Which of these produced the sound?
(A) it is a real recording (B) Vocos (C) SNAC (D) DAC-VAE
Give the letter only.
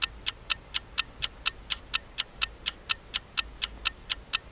A